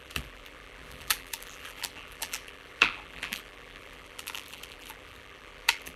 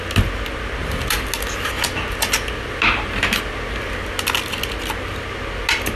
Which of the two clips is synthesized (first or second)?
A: first